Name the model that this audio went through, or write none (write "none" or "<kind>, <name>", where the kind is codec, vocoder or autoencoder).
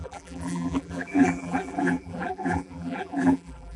vocoder, BigVGAN v2